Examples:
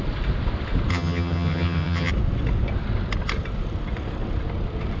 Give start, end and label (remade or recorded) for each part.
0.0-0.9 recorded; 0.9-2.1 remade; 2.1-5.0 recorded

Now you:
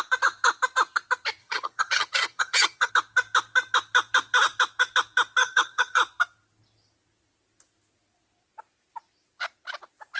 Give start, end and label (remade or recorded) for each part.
0.0-1.4 recorded; 1.4-2.9 remade; 2.9-5.4 recorded; 5.4-6.0 remade; 6.0-10.2 recorded

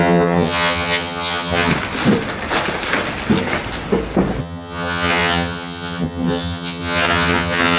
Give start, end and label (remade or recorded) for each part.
0.0-1.7 remade; 1.7-4.4 recorded; 4.4-7.8 remade

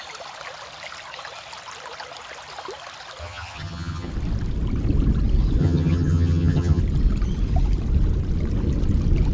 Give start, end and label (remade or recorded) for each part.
0.0-3.2 recorded; 3.2-4.1 remade; 4.1-5.6 recorded; 5.6-6.8 remade; 6.8-9.3 recorded